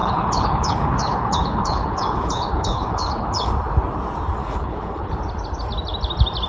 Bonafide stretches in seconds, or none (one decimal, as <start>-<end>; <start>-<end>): 3.5-4.4; 5.1-6.5